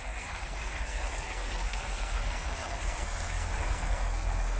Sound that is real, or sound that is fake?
fake